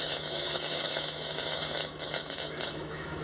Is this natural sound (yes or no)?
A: no